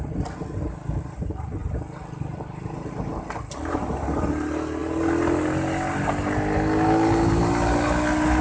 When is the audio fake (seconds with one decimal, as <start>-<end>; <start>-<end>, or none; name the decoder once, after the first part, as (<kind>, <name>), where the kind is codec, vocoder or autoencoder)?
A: none